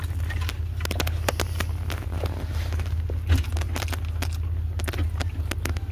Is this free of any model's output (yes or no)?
yes